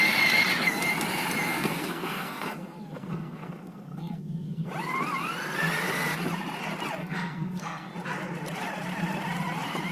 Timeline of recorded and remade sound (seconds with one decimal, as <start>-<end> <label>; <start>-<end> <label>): 0.0-1.5 recorded; 1.5-4.7 remade; 4.7-7.0 recorded; 7.0-7.9 remade; 7.9-9.9 recorded